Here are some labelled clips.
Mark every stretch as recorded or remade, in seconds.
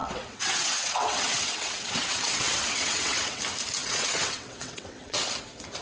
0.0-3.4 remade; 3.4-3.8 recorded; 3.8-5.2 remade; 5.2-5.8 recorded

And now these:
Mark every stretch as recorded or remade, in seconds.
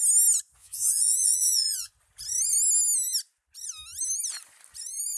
0.0-0.6 recorded; 0.6-1.9 remade; 1.9-5.2 recorded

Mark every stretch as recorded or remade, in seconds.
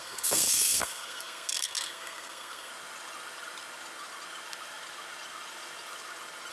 0.0-2.7 remade; 2.7-6.5 recorded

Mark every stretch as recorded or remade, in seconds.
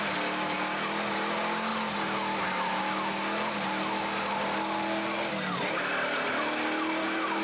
0.0-7.4 recorded